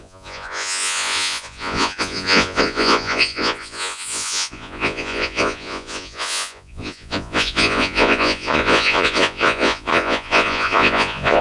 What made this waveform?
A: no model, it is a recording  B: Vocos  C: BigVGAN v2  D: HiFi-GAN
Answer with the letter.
B